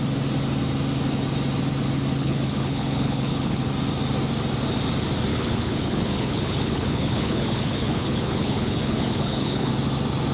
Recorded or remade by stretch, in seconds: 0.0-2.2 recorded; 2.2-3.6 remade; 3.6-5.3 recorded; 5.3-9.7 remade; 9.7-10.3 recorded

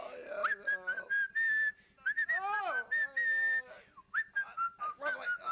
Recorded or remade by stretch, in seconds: 0.0-5.5 recorded

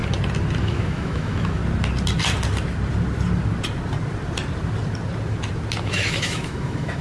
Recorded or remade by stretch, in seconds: 0.0-0.6 recorded; 0.6-1.6 remade; 1.6-5.8 recorded; 5.8-7.0 remade

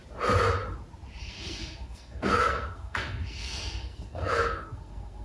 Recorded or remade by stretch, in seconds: 0.0-1.2 recorded; 1.2-5.2 remade

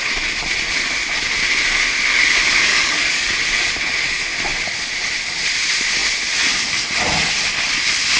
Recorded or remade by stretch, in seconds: 0.0-2.7 recorded; 2.7-3.3 remade; 3.3-8.2 recorded